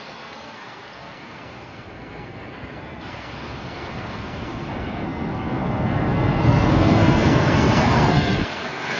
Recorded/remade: remade